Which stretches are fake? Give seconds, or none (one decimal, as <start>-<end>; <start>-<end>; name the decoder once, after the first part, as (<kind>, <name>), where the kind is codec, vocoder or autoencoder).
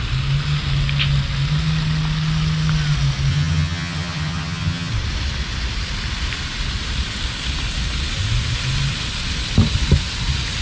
3.3-4.9 (vocoder, HiFi-GAN)